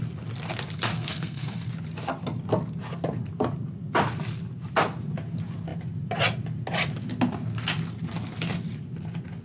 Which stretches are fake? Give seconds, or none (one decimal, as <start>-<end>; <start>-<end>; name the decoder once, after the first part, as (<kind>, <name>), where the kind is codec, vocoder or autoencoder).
0.9-1.7 (codec, SNAC)